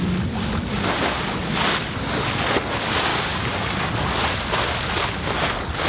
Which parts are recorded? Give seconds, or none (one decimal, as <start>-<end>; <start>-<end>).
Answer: 0.0-3.1; 3.9-5.9